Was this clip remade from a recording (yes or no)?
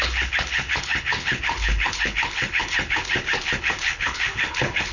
yes